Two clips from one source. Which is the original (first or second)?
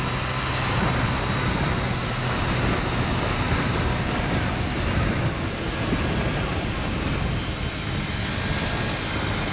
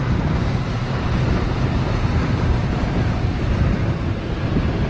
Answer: first